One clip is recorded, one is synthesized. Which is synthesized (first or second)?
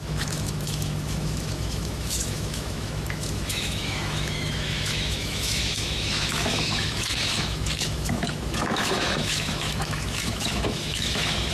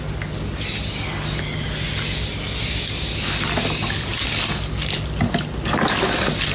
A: first